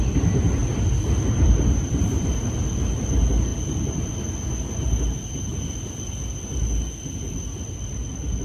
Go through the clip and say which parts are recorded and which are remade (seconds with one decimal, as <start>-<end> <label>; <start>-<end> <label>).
0.0-0.6 recorded; 0.6-2.4 remade; 2.4-8.4 recorded